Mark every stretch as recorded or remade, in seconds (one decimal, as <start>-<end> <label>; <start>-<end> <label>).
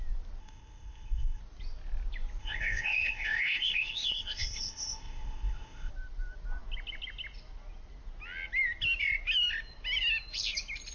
0.0-0.4 recorded; 0.4-1.4 remade; 1.4-2.4 recorded; 2.4-5.9 remade; 5.9-10.9 recorded